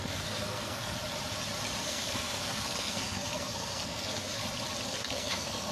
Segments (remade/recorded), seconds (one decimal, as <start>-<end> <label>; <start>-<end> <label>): 0.0-1.0 remade; 1.0-1.8 recorded; 1.8-4.4 remade; 4.4-4.9 recorded; 4.9-5.7 remade